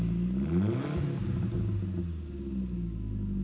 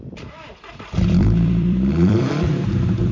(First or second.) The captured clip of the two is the first